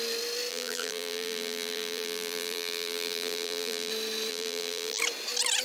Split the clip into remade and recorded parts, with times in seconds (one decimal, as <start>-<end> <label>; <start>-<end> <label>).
0.0-0.5 recorded; 0.5-3.9 remade; 3.9-4.3 recorded; 4.3-5.0 remade; 5.0-5.6 recorded